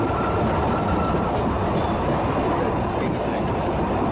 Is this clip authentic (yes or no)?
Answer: yes